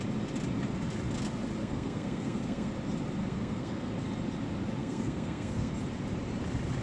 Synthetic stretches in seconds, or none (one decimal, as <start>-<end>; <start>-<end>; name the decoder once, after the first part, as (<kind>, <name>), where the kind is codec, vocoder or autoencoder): 1.6-2.7 (codec, SNAC); 3.2-3.9; 4.8-5.7